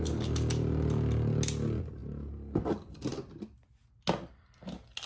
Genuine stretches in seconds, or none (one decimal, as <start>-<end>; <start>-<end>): 0.0-5.1